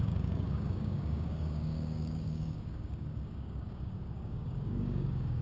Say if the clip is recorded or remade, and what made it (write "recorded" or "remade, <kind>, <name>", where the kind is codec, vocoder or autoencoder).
remade, codec, DAC